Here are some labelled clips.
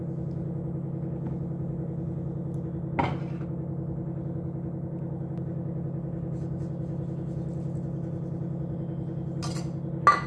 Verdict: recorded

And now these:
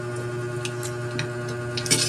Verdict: recorded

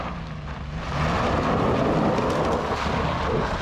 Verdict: recorded